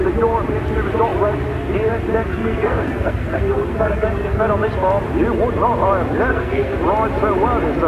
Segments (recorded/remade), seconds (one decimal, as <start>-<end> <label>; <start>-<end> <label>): 0.0-2.3 recorded; 2.3-4.4 remade; 4.4-6.3 recorded; 6.3-6.8 remade; 6.8-7.9 recorded